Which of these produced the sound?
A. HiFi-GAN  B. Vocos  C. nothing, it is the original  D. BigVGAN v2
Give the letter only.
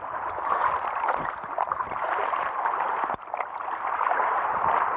C